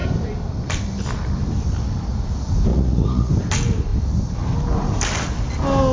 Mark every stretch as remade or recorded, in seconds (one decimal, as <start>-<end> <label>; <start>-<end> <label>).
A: 0.0-2.7 recorded; 2.7-3.3 remade; 3.3-5.9 recorded